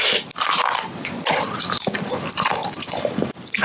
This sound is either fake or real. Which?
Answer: real